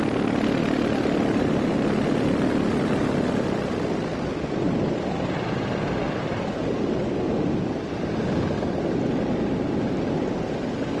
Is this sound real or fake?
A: real